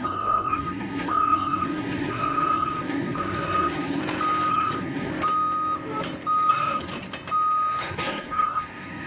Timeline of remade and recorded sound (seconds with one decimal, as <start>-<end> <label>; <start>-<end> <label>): 0.0-4.0 remade; 4.0-4.5 recorded; 4.5-5.1 remade; 5.1-6.5 recorded; 6.5-6.9 remade; 6.9-7.8 recorded; 7.8-9.1 remade